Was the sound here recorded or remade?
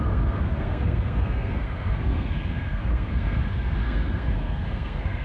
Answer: remade